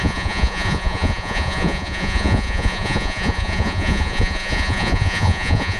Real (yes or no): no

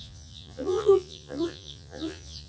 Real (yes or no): no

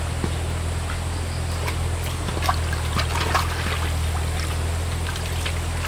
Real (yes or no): yes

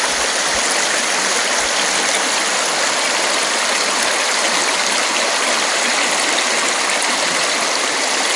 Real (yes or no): yes